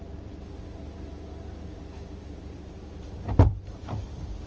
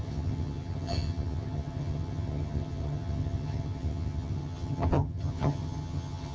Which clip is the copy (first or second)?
second